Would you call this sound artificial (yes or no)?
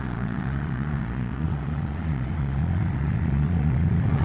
yes